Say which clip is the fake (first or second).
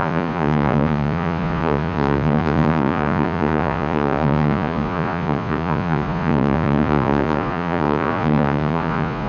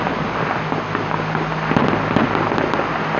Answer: first